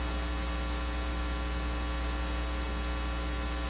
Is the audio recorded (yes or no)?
yes